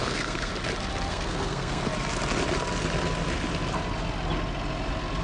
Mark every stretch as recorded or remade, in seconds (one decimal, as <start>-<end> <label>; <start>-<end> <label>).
0.0-0.5 remade; 0.5-1.1 recorded; 1.1-1.8 remade; 1.8-5.2 recorded